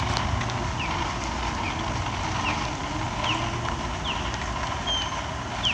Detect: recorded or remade recorded